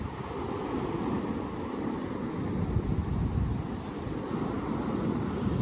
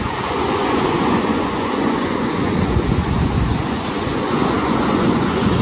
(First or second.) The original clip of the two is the first